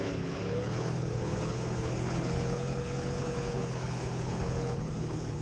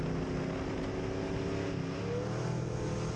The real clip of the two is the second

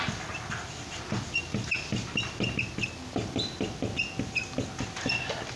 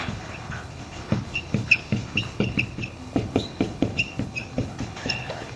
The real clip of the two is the first